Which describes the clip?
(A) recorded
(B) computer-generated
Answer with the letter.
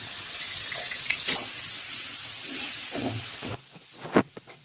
B